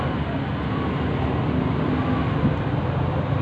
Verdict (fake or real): real